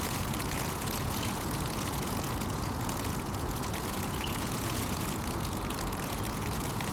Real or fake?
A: fake